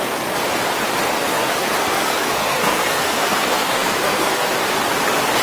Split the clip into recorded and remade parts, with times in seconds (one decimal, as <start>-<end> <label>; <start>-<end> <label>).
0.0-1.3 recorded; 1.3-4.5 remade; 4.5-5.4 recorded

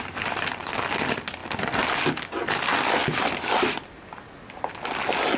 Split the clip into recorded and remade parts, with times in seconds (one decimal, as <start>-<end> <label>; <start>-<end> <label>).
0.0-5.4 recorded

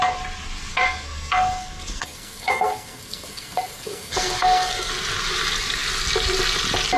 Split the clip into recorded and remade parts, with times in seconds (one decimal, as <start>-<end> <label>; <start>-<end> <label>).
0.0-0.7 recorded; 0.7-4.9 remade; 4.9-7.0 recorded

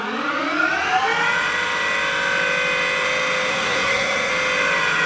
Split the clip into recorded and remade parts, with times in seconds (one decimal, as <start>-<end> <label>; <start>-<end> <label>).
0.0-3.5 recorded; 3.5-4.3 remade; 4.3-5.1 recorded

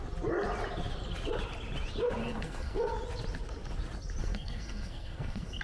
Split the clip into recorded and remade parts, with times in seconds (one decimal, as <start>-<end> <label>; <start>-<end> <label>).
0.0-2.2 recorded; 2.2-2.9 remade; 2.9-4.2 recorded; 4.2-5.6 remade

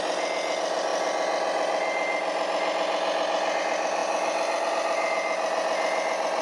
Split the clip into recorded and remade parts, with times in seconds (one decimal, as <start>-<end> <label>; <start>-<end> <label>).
0.0-6.4 recorded